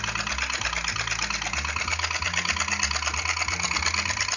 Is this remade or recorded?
recorded